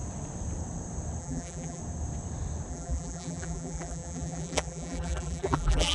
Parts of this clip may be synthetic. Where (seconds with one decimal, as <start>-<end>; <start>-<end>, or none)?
1.2-1.8; 2.7-5.9